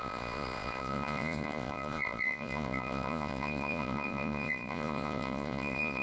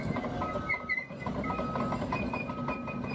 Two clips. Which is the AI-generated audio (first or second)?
first